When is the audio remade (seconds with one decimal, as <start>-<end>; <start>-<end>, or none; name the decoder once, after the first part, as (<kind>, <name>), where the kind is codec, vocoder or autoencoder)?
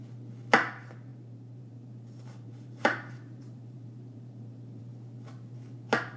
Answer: 1.1-4.8 (vocoder, BigVGAN v2)